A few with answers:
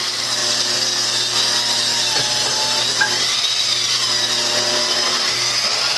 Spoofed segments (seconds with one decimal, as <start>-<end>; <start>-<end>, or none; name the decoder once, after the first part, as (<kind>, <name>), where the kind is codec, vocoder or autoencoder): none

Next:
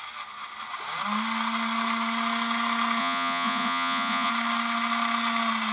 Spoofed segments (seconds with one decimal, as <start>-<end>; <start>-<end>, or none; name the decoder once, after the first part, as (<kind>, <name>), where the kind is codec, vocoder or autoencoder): 3.0-4.3 (vocoder, Vocos)

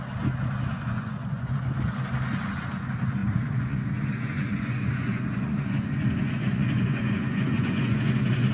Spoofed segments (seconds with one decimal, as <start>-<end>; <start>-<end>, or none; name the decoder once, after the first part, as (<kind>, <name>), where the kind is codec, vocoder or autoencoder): 0.7-1.6 (vocoder, Vocos); 3.2-8.5